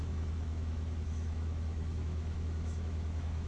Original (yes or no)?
no